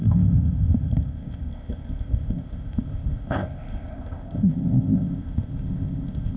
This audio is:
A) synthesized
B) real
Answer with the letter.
A